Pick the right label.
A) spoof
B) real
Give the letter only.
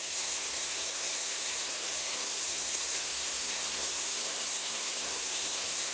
A